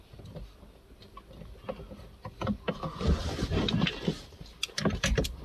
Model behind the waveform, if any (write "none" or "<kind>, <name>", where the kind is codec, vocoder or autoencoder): none